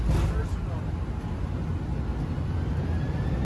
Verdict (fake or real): real